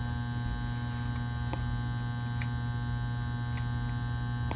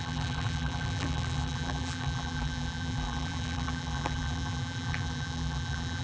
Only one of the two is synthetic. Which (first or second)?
second